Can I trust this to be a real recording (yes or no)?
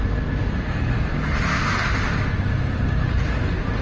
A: yes